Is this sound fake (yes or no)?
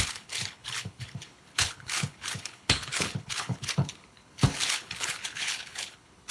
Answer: yes